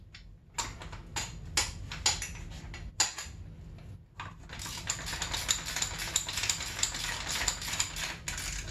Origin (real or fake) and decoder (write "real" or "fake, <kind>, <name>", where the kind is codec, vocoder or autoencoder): real